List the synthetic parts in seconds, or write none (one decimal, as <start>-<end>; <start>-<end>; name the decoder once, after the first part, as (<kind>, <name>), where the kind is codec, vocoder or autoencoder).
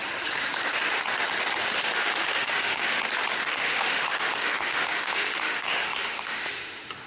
1.8-3.0 (autoencoder, DAC-VAE); 3.4-7.1